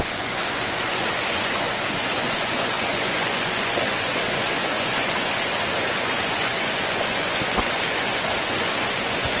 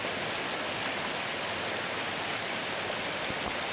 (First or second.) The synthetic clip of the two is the first